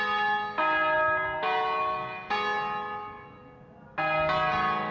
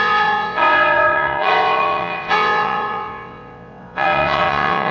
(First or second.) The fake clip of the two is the second